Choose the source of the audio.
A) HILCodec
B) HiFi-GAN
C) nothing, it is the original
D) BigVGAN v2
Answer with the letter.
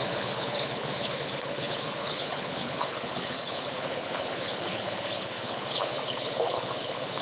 A